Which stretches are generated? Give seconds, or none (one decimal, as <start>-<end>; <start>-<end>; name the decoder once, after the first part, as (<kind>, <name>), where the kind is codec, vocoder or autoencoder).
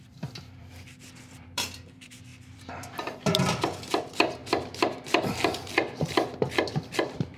0.0-7.4 (vocoder, BigVGAN v2)